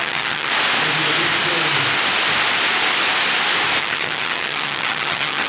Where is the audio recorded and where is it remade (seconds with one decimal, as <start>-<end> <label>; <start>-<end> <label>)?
0.0-0.5 remade; 0.5-3.8 recorded; 3.8-5.5 remade